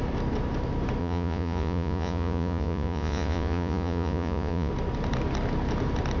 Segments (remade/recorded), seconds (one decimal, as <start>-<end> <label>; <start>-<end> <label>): 0.0-1.0 recorded; 1.0-4.7 remade; 4.7-6.2 recorded